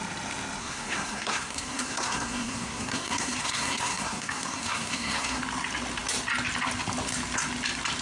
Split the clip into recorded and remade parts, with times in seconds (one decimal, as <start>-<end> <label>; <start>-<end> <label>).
0.0-0.6 recorded; 0.6-5.4 remade; 5.4-8.0 recorded